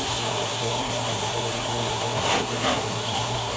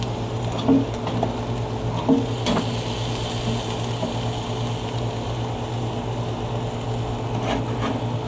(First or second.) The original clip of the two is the second